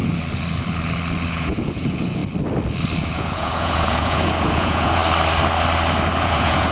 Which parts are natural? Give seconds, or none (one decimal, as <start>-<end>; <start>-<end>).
0.0-1.3; 2.2-3.0; 5.0-6.2